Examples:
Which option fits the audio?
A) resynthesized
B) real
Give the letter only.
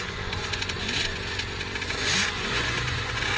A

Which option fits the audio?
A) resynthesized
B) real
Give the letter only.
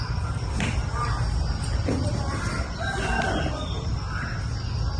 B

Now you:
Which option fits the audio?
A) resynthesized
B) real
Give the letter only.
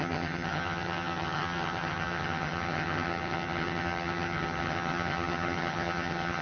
A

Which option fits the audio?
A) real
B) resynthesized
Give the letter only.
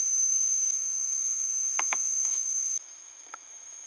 B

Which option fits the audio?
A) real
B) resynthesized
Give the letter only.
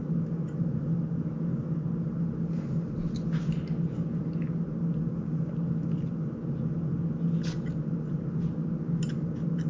A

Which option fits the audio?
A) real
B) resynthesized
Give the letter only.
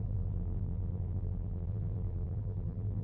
B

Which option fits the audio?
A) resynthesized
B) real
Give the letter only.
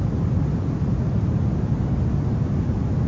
B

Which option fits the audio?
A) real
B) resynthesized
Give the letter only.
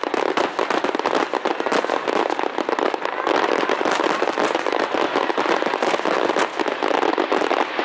A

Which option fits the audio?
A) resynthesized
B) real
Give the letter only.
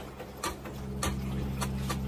B